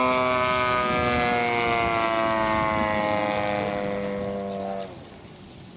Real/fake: real